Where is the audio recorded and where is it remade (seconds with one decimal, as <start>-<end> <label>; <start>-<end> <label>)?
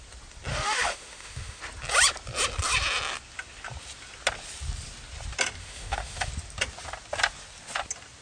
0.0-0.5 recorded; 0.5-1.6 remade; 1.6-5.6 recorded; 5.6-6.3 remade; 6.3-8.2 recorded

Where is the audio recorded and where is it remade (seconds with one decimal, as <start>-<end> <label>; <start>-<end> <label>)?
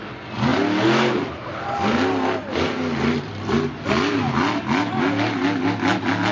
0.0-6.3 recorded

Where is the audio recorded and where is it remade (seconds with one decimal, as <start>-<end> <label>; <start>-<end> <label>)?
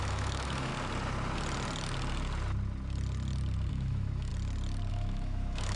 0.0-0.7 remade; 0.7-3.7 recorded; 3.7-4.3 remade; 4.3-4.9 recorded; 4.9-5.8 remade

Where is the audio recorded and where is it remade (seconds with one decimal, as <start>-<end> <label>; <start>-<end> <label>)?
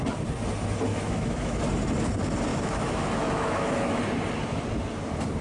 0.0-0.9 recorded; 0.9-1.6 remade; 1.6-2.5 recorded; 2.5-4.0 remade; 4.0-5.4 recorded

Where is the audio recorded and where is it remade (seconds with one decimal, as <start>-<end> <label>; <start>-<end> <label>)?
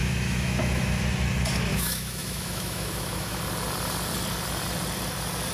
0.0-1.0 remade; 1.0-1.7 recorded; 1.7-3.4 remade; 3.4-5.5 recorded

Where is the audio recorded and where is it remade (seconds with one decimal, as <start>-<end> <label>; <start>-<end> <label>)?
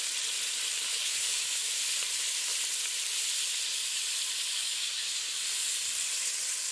0.0-0.9 recorded; 0.9-1.8 remade; 1.8-4.6 recorded; 4.6-5.4 remade; 5.4-6.7 recorded